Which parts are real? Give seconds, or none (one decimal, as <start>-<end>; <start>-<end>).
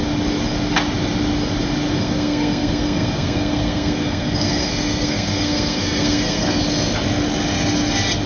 0.0-1.9; 6.6-8.3